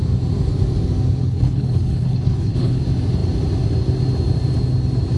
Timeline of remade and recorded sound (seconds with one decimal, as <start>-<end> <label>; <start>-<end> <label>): 0.0-1.2 recorded; 1.2-2.8 remade; 2.8-5.2 recorded